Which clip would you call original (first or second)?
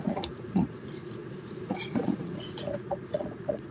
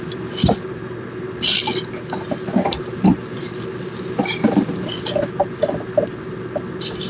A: second